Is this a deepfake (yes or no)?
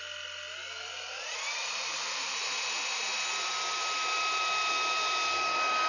no